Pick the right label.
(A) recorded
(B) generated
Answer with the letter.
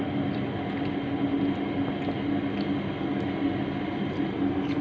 A